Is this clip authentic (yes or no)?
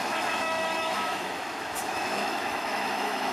no